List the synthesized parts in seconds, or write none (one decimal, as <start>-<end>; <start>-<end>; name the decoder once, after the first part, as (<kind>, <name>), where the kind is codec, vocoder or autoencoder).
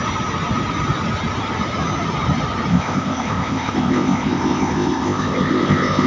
2.7-6.1 (codec, ZipCodec)